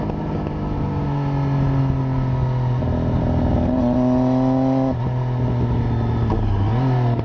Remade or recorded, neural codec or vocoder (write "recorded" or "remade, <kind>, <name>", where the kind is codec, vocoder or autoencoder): recorded